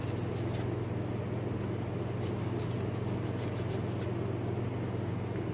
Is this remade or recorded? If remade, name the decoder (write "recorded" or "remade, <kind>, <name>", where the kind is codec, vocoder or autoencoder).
recorded